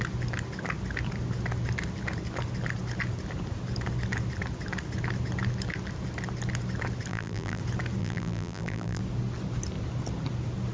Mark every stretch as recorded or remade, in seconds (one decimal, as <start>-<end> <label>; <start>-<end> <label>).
0.0-7.1 recorded; 7.1-7.6 remade; 7.6-8.0 recorded; 8.0-9.0 remade; 9.0-10.7 recorded